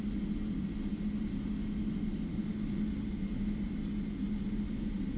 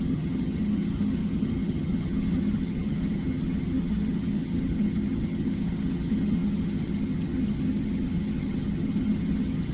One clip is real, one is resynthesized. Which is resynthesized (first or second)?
second